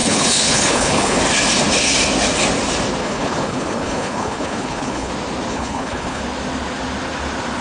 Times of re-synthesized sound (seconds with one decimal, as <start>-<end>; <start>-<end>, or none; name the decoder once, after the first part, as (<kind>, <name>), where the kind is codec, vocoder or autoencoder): 0.0-1.2 (codec, HILCodec); 3.0-5.1; 5.5-6.2